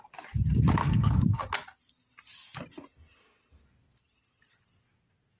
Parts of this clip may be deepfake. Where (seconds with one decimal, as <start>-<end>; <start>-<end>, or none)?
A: 0.8-1.4